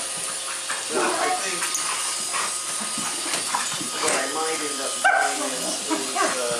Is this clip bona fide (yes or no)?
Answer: yes